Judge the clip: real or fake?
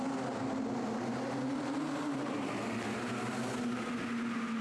real